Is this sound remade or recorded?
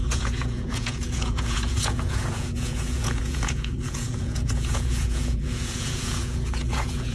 remade